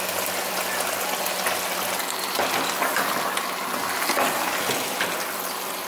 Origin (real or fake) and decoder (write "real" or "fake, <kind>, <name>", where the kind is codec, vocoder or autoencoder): real